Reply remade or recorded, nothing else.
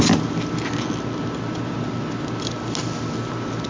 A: recorded